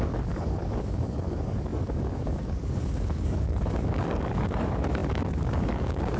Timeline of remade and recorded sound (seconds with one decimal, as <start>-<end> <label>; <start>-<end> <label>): 0.0-6.2 remade